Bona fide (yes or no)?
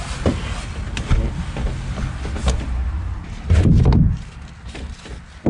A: yes